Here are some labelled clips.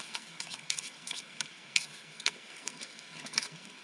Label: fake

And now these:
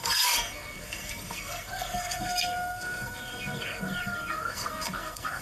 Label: fake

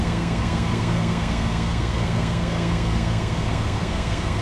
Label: fake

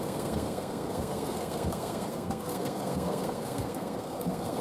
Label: fake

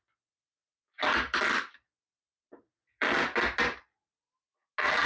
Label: real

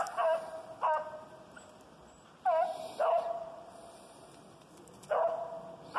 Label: real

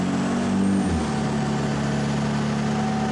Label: real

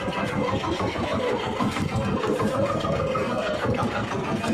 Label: fake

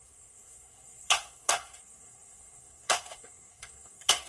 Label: fake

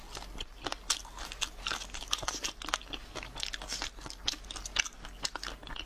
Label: real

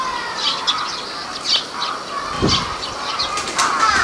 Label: real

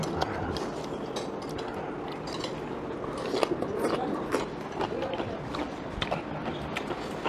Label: real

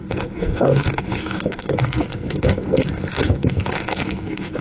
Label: fake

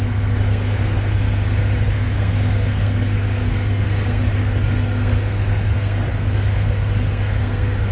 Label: fake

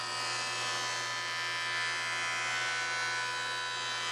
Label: real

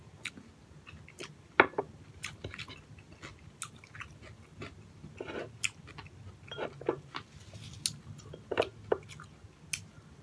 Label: real